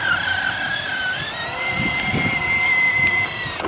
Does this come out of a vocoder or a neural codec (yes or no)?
no